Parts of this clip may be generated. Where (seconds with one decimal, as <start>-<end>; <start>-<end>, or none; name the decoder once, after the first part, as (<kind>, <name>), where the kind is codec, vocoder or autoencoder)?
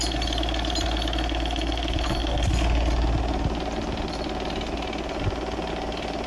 none